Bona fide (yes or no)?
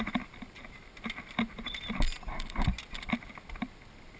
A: yes